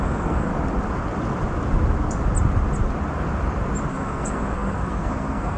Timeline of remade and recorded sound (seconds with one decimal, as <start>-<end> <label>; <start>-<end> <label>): 0.0-0.5 remade; 0.5-3.9 recorded; 3.9-5.6 remade